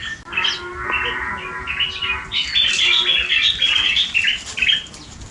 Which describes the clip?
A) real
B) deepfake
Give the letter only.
A